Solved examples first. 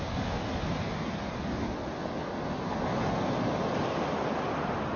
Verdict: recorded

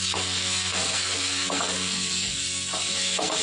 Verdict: remade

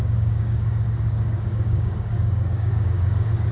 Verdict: remade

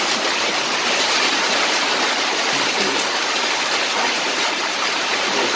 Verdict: remade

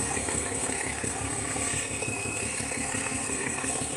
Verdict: remade